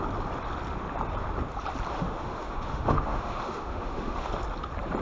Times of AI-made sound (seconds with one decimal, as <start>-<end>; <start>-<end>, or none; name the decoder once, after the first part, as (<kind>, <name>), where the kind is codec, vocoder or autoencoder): 1.9-4.3 (autoencoder, DAC-VAE)